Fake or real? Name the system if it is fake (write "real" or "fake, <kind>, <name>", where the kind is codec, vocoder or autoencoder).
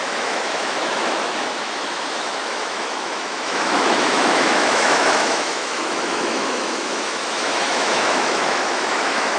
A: fake, autoencoder, DAC-VAE